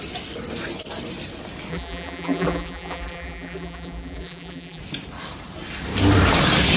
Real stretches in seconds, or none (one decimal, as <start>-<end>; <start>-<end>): 0.0-1.7; 4.8-6.8